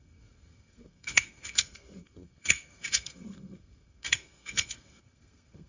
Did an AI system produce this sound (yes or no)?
yes